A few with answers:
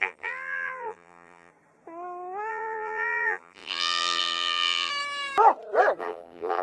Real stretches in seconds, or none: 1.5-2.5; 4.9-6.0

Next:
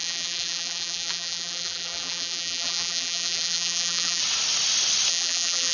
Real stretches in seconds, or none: 4.2-5.1

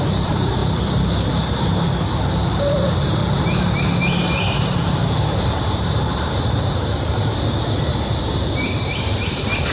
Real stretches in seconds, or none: 0.6-2.6; 3.2-4.0

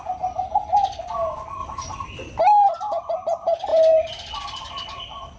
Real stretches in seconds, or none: 0.0-1.6; 2.4-3.7

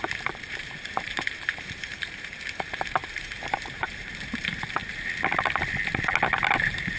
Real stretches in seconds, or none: 4.8-6.6

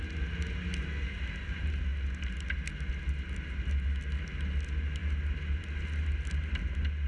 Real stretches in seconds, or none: 0.0-7.1